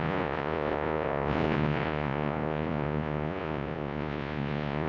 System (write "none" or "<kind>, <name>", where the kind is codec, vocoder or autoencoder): vocoder, Vocos